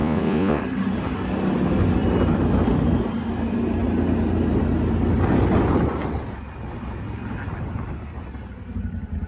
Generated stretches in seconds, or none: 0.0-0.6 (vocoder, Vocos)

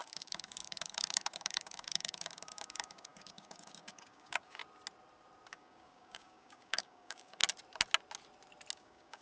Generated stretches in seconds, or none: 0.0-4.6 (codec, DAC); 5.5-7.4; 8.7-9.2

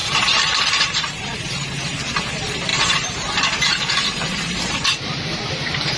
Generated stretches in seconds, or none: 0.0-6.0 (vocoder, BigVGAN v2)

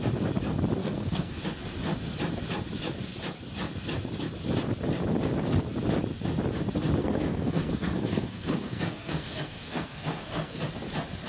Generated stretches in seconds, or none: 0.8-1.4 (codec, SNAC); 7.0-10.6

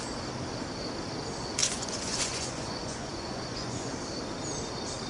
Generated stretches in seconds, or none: 1.6-3.9 (vocoder, Vocos)